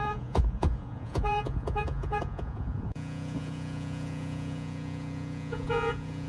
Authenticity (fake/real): fake